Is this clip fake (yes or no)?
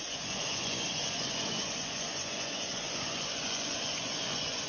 yes